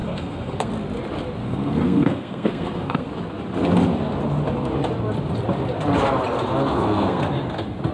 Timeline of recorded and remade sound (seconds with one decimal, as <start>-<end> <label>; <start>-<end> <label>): 0.0-0.7 remade; 0.7-1.4 recorded; 1.4-3.1 remade; 3.1-6.7 recorded; 6.7-7.2 remade; 7.2-7.9 recorded